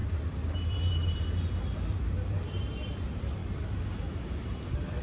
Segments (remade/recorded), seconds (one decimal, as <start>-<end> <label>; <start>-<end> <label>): 0.0-3.0 remade; 3.0-5.0 recorded